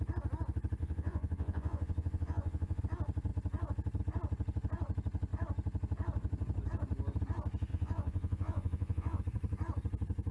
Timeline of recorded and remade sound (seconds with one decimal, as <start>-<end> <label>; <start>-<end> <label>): 0.0-0.8 recorded; 0.8-2.8 remade; 2.8-7.7 recorded; 7.7-9.2 remade; 9.2-10.3 recorded